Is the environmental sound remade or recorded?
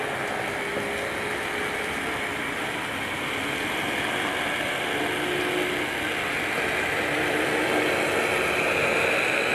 recorded